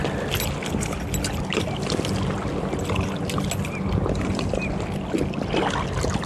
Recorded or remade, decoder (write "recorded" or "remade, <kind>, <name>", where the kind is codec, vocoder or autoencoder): recorded